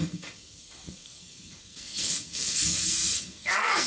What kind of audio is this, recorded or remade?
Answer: remade